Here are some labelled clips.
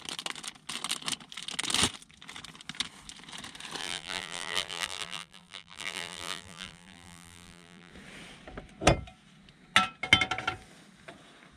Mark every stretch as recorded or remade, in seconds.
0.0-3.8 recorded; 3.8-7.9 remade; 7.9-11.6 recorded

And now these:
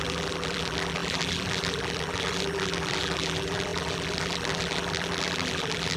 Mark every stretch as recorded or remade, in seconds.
0.0-6.0 remade

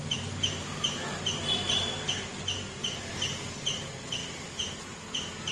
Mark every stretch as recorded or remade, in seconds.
0.0-3.3 remade; 3.3-5.5 recorded